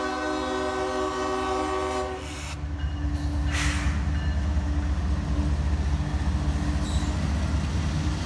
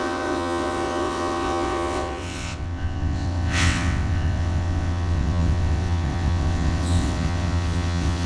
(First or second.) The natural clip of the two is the first